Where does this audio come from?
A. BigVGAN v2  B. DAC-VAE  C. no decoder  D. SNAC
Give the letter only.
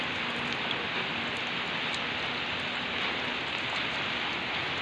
C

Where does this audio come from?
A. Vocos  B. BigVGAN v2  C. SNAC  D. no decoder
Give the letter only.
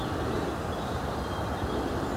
D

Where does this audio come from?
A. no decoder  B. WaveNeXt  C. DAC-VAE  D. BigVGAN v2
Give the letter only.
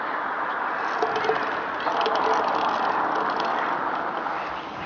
A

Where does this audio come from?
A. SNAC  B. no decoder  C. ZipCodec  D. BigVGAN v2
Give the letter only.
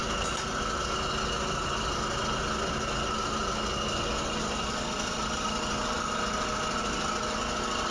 B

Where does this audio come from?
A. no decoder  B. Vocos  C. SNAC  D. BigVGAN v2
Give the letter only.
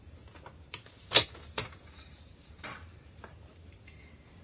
D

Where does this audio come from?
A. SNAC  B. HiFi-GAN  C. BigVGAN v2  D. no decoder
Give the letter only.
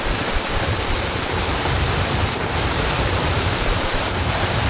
C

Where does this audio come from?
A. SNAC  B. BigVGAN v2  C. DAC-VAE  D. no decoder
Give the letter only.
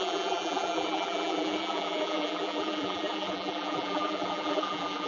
B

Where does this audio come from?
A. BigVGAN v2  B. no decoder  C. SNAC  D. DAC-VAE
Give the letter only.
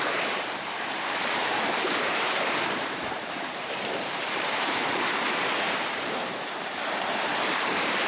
A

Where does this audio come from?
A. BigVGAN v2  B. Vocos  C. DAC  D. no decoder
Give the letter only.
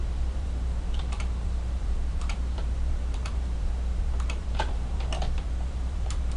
A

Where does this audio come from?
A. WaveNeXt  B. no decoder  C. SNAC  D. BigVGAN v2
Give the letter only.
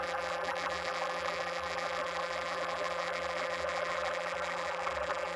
D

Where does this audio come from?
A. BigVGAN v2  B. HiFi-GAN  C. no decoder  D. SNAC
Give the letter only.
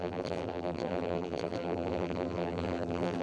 A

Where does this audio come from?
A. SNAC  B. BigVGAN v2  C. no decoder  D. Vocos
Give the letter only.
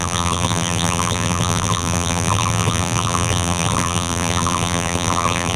B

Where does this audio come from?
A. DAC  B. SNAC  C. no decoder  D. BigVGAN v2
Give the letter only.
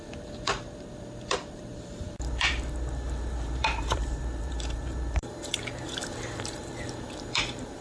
D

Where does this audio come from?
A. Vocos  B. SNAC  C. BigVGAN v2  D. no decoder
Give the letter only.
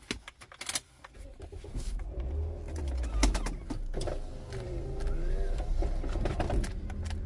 D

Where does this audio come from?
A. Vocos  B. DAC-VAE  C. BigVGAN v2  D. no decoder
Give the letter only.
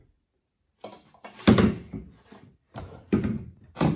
C